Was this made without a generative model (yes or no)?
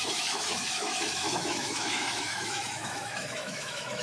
no